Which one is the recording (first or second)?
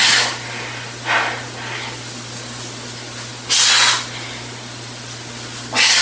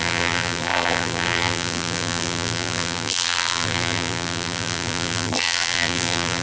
first